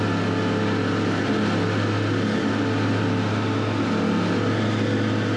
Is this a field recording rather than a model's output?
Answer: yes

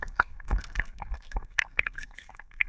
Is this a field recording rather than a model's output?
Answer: no